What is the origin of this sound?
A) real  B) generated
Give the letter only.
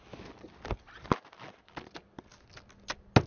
A